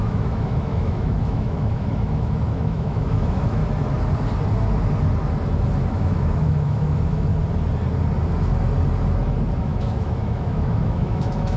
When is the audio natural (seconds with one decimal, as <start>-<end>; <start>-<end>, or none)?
3.6-5.9; 7.3-9.6

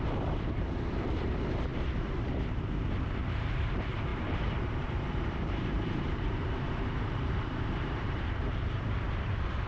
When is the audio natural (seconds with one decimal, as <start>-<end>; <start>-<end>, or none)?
none

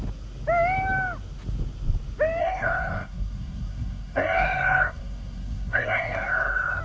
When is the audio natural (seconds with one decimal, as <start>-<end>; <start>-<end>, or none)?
0.0-2.4

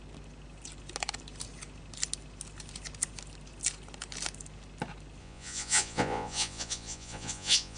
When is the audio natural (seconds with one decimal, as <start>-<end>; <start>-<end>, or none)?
0.0-5.2

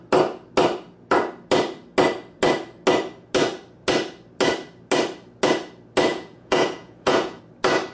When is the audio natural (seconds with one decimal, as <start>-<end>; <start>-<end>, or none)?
0.0-6.1; 7.4-7.9

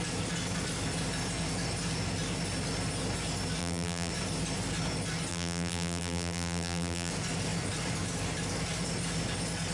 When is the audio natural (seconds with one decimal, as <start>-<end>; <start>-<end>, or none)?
0.0-3.6; 4.1-5.3; 7.1-9.7

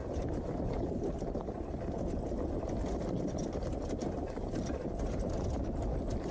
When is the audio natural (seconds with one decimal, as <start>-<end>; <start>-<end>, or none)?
0.0-6.3

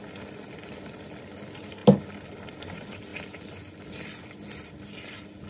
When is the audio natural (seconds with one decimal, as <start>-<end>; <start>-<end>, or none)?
0.0-3.1; 4.5-5.5